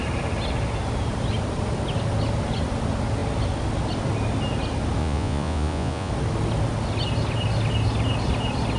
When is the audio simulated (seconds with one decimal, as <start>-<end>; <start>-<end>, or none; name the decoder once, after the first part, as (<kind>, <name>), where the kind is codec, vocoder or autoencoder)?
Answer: 5.0-6.1 (vocoder, Vocos)